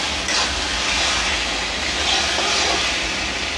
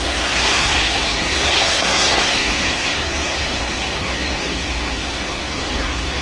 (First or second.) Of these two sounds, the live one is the first